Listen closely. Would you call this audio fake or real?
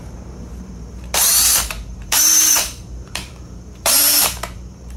fake